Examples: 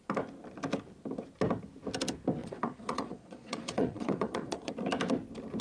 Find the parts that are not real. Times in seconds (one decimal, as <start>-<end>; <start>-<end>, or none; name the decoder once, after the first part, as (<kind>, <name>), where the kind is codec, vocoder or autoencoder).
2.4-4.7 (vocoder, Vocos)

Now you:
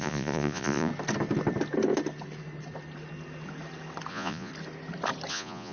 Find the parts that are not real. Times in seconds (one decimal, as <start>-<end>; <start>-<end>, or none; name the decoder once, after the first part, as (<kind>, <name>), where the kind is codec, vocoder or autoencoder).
0.0-0.9 (vocoder, Vocos); 4.1-4.5; 5.3-5.7

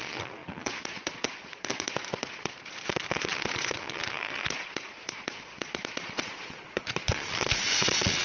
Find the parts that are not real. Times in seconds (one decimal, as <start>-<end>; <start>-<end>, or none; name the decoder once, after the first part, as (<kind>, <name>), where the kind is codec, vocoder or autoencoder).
0.0-8.2 (vocoder, Vocos)

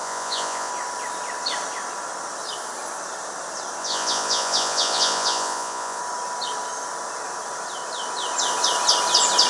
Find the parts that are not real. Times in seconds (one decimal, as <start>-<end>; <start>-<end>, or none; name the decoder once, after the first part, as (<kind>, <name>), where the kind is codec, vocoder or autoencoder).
0.0-0.7 (vocoder, Vocos); 3.8-6.0

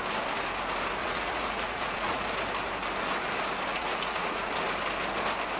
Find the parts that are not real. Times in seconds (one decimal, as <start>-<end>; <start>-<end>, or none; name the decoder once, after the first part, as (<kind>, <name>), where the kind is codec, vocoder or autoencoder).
1.0-2.2 (vocoder, Vocos); 3.7-4.5

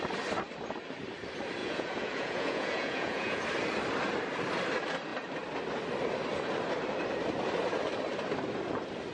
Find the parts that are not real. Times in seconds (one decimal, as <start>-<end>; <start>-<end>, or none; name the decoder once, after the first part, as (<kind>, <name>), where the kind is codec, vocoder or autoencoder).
1.6-3.4 (vocoder, Vocos)

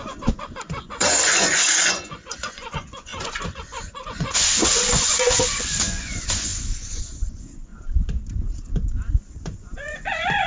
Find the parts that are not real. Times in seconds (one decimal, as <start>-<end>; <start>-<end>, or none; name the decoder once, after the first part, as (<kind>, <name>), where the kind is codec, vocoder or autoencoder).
0.0-7.7 (vocoder, Vocos); 9.3-10.5

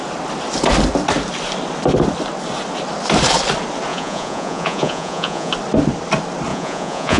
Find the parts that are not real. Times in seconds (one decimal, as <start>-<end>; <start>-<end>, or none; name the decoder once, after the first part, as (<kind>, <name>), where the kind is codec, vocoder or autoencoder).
3.9-5.5 (vocoder, Vocos); 6.5-7.2